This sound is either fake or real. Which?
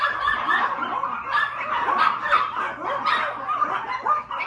real